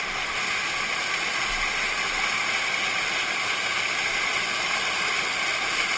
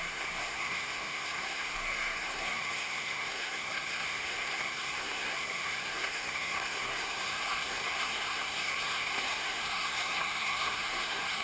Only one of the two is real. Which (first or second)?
first